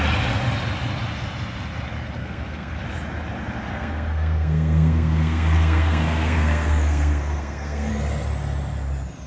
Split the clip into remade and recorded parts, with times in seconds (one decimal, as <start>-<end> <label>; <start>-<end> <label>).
0.0-2.2 recorded; 2.2-2.8 remade; 2.8-3.7 recorded; 3.7-7.9 remade; 7.9-9.3 recorded